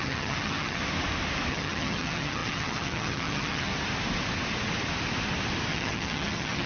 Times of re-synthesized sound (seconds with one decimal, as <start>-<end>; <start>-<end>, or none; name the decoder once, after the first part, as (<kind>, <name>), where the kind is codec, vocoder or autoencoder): 0.0-0.8 (vocoder, HiFi-GAN); 1.5-3.7; 5.7-6.7